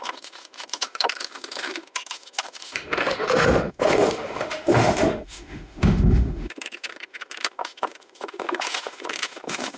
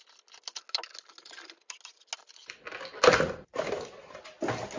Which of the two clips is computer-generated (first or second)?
first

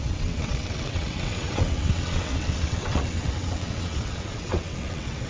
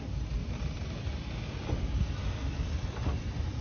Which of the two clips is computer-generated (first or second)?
first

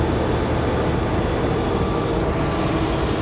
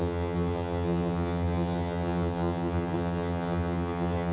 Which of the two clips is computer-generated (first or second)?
second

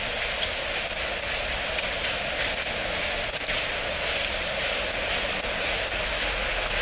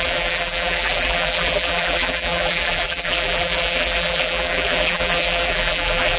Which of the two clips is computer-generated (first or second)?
second